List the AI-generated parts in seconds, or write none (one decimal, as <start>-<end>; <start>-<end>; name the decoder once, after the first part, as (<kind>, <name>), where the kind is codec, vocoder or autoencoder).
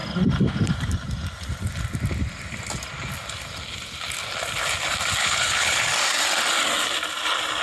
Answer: 5.2-5.9 (codec, HILCodec)